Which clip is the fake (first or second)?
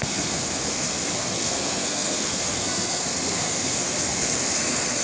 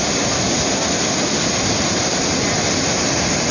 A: first